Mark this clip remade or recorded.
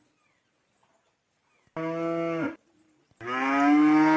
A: recorded